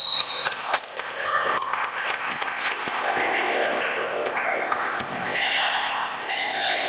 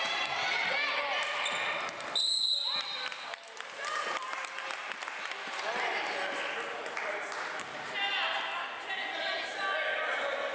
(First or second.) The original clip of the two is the second